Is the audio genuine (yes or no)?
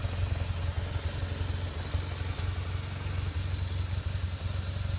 yes